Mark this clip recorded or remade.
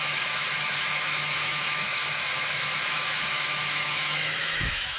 remade